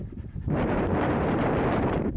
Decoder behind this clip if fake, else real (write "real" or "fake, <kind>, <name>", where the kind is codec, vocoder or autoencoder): fake, vocoder, BigVGAN v2